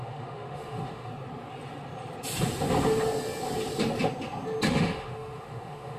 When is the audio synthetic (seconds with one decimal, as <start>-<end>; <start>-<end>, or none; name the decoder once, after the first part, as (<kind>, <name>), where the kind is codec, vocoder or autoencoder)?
0.0-1.1 (autoencoder, DAC-VAE); 4.7-6.0